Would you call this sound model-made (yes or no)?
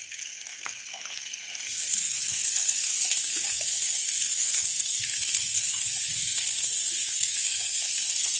yes